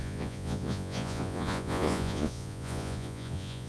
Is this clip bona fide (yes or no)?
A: no